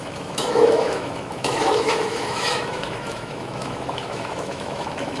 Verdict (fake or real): fake